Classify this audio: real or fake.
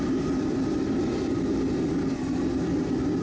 real